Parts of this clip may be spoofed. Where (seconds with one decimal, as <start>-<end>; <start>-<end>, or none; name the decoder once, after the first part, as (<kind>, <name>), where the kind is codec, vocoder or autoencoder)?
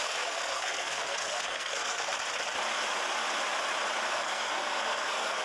0.0-2.1 (codec, SNAC); 4.1-5.4